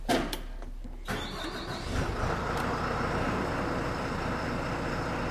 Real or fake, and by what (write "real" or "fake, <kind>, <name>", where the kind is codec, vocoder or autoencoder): real